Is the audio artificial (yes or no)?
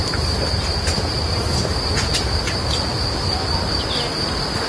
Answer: no